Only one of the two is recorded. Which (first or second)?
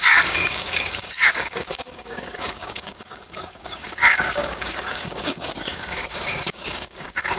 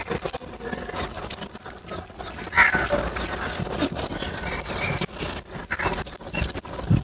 second